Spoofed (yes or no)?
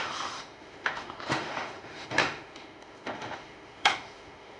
yes